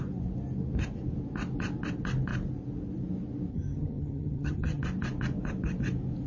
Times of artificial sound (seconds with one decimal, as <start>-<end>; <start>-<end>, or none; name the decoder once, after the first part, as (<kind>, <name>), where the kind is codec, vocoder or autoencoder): 3.5-4.8 (vocoder, HiFi-GAN)